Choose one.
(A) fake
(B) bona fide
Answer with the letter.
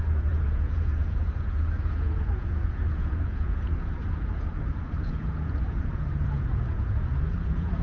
A